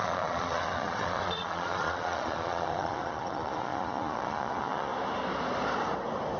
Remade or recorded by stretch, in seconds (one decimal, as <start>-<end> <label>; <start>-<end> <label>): 0.0-4.9 remade; 4.9-6.4 recorded